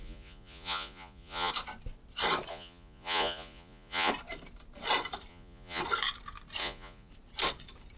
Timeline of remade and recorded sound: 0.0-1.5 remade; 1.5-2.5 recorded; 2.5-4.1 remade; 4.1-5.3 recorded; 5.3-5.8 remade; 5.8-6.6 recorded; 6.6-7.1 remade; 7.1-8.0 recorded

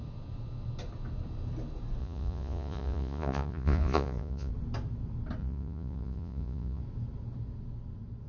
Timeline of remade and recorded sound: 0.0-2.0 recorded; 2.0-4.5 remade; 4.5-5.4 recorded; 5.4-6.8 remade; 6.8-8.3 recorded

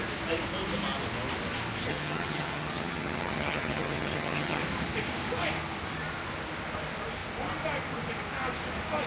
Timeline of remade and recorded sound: 0.0-1.9 recorded; 1.9-4.6 remade; 4.6-9.1 recorded